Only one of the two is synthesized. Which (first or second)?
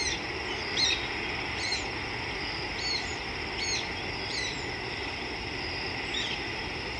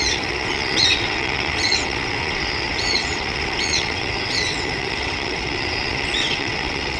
second